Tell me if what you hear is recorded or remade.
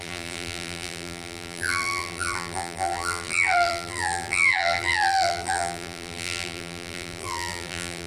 remade